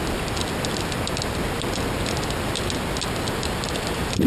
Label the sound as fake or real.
real